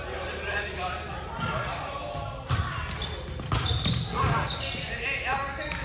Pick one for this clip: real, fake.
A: real